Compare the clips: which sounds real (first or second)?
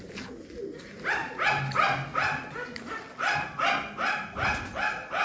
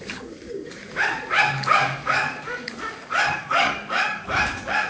first